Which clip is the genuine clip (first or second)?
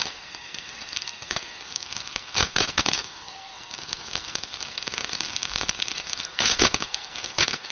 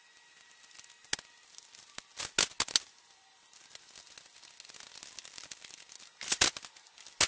second